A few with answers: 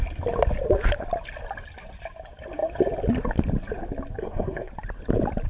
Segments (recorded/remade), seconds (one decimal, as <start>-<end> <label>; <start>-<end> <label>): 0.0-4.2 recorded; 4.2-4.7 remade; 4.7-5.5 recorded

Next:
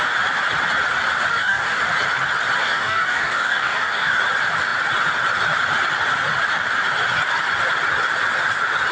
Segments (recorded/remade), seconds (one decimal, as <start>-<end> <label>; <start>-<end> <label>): 0.0-1.3 recorded; 1.3-1.8 remade; 1.8-2.6 recorded; 2.6-4.2 remade; 4.2-8.9 recorded

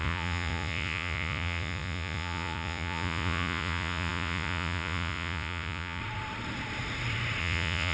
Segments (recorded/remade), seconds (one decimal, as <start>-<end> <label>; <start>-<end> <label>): 0.0-6.0 remade; 6.0-7.4 recorded; 7.4-7.9 remade